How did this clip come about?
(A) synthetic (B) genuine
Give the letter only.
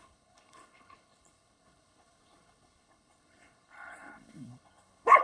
A